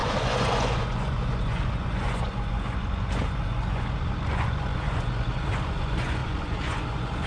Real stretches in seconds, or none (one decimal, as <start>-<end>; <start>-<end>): none

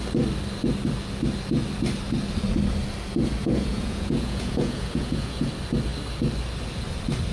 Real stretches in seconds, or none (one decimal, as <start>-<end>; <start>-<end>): 0.0-3.4; 5.5-7.3

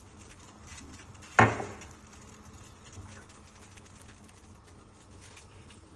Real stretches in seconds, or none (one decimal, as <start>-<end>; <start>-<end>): 0.0-6.0

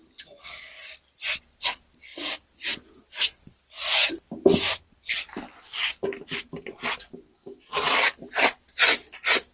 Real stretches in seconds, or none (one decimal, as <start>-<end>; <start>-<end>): 0.0-9.5